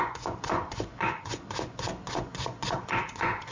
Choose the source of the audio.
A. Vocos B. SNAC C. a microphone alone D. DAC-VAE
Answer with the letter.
A